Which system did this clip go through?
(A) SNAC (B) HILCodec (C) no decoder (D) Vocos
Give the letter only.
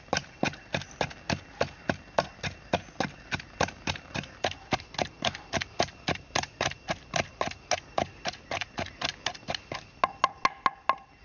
C